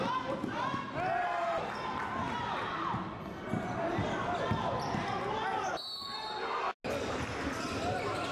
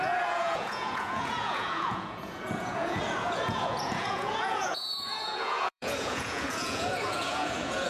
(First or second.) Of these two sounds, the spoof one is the second